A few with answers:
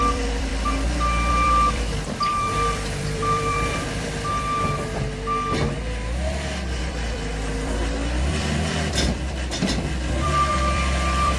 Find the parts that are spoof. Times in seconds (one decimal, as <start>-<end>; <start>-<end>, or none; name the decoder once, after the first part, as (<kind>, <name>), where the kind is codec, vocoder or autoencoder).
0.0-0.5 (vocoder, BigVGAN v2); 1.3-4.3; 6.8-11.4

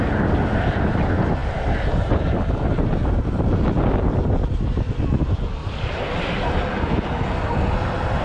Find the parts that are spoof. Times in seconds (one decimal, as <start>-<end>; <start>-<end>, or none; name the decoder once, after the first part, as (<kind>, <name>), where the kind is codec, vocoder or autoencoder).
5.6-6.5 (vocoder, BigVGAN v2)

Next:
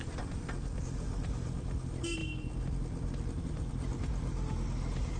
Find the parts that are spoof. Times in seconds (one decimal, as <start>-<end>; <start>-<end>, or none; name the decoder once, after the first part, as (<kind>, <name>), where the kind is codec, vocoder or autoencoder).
none